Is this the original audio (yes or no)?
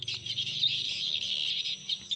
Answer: no